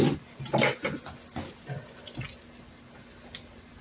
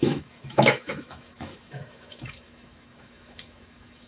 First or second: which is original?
first